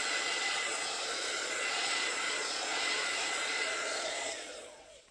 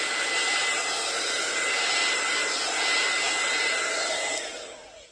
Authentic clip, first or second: second